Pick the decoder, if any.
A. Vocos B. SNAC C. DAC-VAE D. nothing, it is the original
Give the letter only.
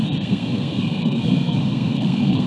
B